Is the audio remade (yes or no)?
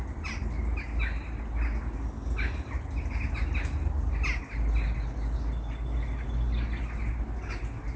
no